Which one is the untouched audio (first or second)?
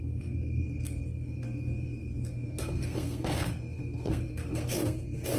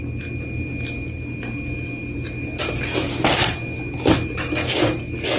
second